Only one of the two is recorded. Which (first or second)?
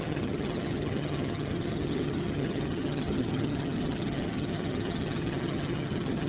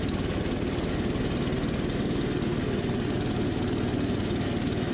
second